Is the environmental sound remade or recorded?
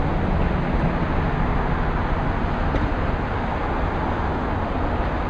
recorded